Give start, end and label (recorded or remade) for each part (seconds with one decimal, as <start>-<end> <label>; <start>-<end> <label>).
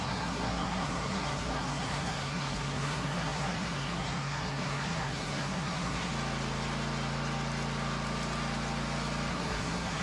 0.0-6.1 remade; 6.1-9.3 recorded; 9.3-10.0 remade